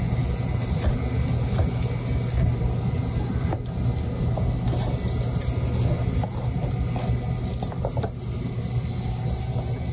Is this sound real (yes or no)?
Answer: yes